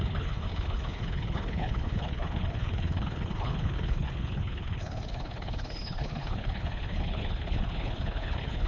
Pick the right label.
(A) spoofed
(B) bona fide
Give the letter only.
A